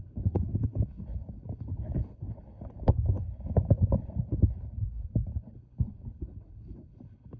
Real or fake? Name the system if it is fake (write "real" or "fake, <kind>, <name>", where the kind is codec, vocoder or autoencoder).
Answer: fake, codec, HILCodec